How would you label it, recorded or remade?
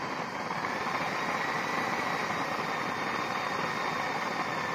remade